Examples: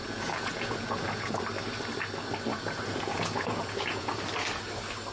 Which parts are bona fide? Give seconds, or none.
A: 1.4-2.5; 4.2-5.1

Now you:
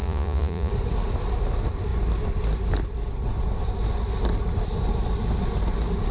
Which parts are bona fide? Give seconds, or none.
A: 0.7-6.1

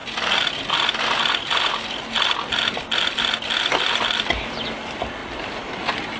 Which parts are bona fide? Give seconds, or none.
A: 0.0-6.2